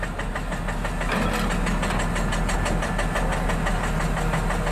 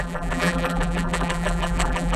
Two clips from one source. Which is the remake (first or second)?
second